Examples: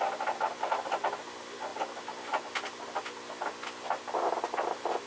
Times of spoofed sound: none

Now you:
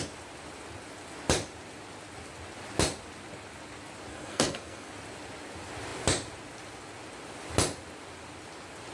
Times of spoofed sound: 4.1-4.9 (codec, SNAC)

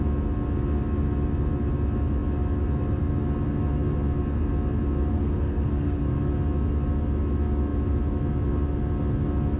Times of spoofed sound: 5.1-6.0 (codec, SNAC)

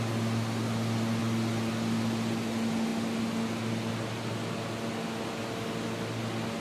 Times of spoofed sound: none